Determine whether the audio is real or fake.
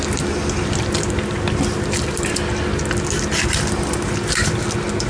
real